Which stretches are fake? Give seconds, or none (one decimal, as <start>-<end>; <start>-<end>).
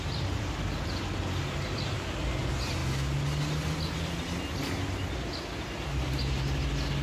none